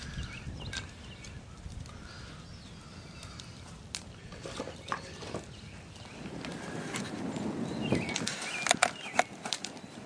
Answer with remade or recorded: recorded